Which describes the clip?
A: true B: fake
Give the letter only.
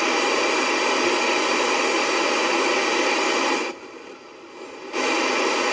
A